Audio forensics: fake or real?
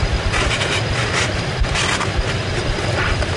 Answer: real